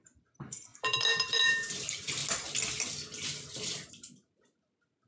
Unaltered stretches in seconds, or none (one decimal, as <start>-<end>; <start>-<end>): 2.2-3.9